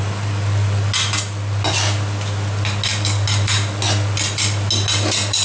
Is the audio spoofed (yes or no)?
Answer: no